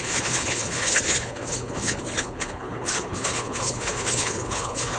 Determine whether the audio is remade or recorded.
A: remade